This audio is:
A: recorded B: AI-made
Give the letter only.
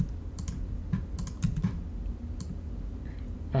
A